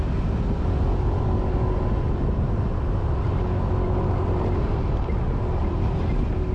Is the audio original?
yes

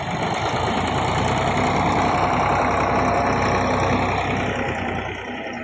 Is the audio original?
yes